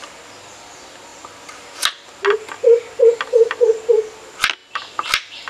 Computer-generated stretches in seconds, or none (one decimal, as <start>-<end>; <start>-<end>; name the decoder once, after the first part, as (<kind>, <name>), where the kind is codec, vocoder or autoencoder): none